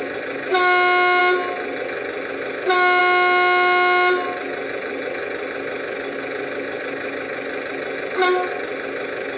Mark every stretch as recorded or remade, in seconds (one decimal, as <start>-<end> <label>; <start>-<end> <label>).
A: 0.0-9.4 recorded